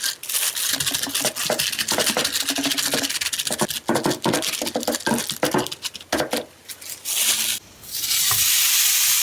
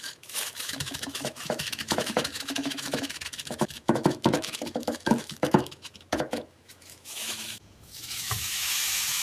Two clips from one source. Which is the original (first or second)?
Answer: first